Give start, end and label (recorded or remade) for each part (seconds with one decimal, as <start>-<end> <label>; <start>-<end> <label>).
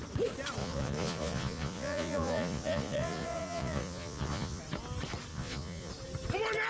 0.0-0.6 recorded; 0.6-4.6 remade; 4.6-5.3 recorded; 5.3-5.9 remade; 5.9-6.7 recorded